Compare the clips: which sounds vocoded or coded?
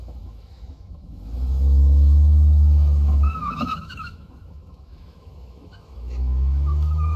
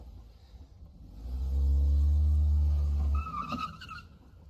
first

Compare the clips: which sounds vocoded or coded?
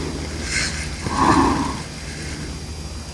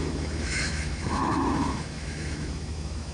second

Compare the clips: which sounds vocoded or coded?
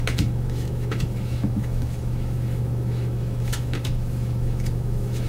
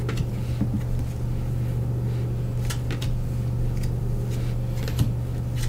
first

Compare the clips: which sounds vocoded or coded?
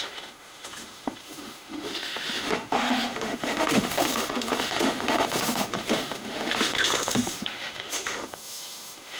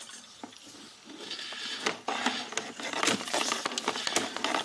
first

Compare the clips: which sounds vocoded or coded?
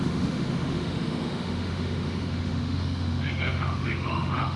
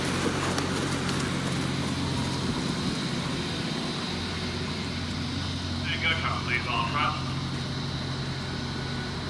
first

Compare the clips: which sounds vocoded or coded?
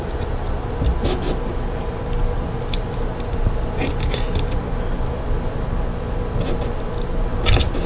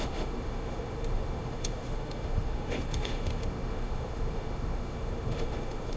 second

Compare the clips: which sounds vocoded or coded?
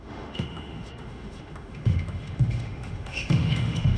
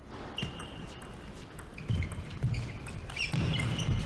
first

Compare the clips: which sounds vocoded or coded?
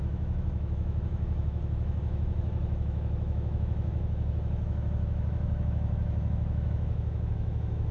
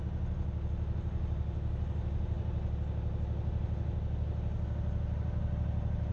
first